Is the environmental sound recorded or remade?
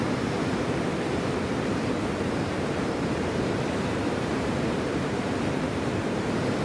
remade